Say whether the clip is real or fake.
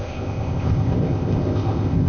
fake